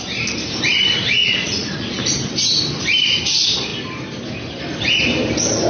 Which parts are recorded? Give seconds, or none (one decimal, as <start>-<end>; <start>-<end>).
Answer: 0.0-1.2; 1.9-5.7